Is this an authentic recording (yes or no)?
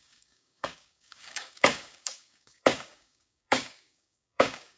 no